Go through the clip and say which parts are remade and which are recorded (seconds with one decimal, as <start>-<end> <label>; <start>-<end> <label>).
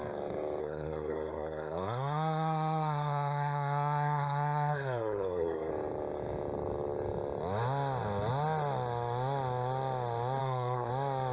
0.0-0.6 recorded; 0.6-5.7 remade; 5.7-10.4 recorded; 10.4-10.9 remade; 10.9-11.3 recorded